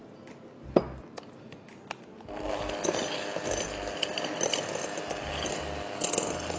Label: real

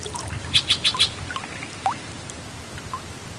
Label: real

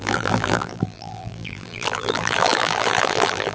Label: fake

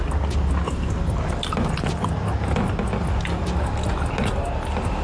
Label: real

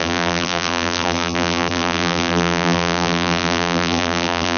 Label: fake